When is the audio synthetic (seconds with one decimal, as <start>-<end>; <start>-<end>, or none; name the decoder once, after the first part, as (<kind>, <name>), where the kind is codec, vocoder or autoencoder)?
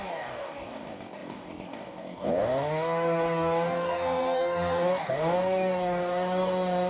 0.0-6.9 (codec, DAC)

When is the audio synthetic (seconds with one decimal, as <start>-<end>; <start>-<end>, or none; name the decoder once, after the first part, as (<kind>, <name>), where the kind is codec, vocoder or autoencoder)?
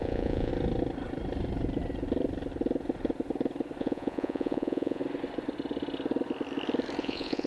0.0-0.5 (vocoder, Vocos); 3.8-5.0; 7.0-7.5